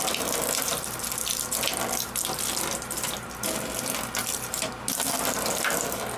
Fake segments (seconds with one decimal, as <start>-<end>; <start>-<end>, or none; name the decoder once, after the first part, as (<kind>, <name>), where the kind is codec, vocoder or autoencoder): 0.7-1.3 (vocoder, BigVGAN v2); 4.2-5.7